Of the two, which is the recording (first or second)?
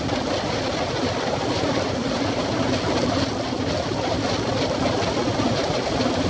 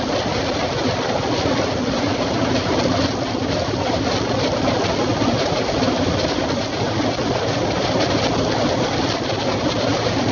second